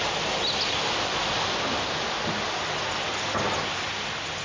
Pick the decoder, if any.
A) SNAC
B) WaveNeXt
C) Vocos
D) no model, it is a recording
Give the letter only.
D